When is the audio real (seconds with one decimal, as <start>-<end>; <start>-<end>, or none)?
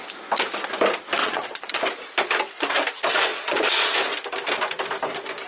0.0-1.2; 1.8-3.3; 4.0-5.5